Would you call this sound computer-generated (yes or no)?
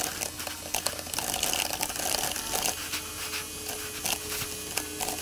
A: no